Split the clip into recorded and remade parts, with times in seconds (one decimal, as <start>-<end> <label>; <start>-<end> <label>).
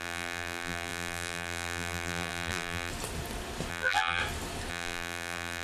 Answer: 0.0-2.9 remade; 2.9-3.7 recorded; 3.7-4.2 remade; 4.2-4.7 recorded; 4.7-5.6 remade